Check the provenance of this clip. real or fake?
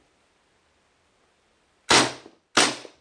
real